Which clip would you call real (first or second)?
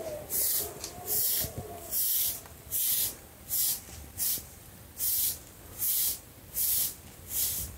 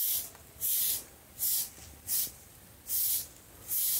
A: second